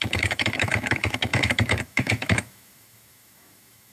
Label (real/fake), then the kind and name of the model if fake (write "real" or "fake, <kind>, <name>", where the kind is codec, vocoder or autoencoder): fake, autoencoder, DAC-VAE